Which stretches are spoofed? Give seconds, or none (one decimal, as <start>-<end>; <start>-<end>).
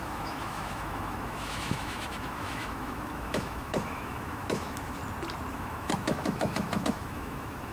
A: 0.0-5.0; 5.5-7.7